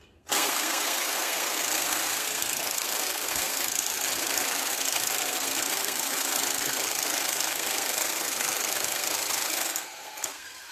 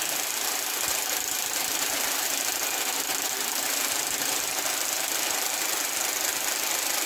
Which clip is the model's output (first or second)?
first